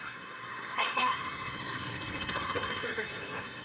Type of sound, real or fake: fake